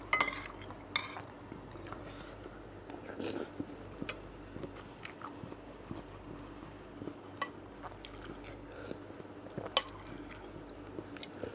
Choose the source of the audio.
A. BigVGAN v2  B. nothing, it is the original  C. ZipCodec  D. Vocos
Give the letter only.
B